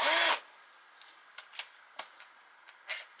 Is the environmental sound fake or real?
real